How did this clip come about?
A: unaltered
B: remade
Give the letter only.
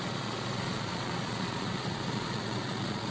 B